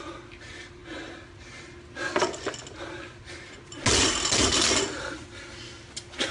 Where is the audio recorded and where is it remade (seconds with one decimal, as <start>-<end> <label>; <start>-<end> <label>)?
0.0-6.3 recorded